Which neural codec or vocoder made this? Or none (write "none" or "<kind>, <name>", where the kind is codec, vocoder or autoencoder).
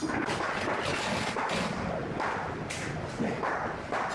none